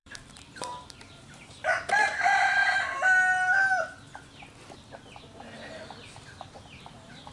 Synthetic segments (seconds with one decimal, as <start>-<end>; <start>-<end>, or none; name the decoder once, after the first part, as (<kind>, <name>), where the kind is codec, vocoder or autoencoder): 0.0-2.6 (vocoder, BigVGAN v2); 6.8-7.3